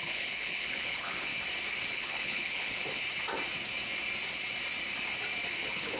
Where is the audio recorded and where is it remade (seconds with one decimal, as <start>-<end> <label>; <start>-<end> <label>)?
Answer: 0.0-1.3 remade; 1.3-1.9 recorded; 1.9-2.8 remade; 2.8-5.6 recorded; 5.6-6.0 remade